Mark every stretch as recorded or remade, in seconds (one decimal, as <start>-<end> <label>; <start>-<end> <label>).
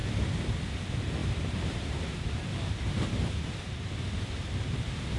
0.0-1.2 recorded; 1.2-4.0 remade; 4.0-5.2 recorded